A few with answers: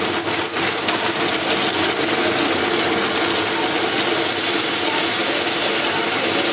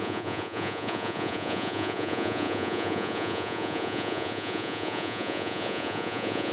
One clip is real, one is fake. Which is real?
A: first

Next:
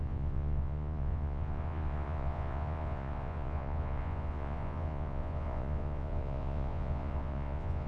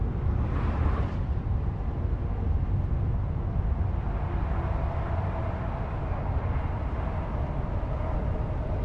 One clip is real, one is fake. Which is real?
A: second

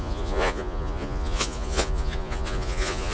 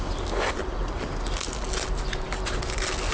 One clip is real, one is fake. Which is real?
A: second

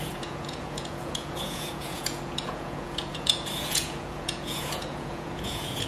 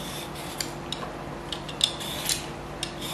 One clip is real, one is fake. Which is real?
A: second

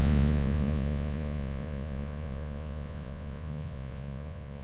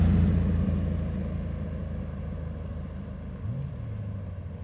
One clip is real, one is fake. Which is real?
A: second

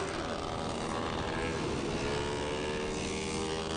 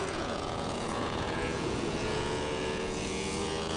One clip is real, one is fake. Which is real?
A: first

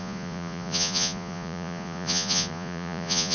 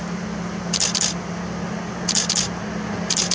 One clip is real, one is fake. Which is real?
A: second